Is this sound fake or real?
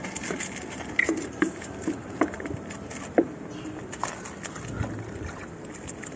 real